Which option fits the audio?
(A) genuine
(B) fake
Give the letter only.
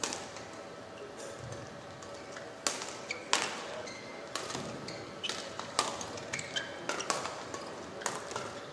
A